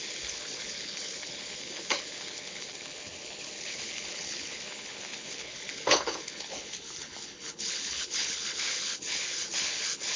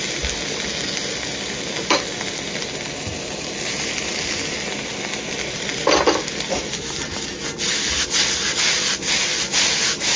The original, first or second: second